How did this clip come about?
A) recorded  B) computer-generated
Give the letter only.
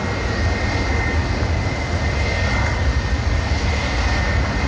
A